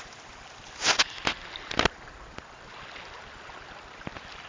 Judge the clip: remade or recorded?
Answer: recorded